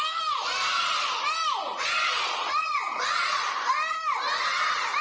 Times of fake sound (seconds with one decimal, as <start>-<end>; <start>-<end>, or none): 1.7-3.7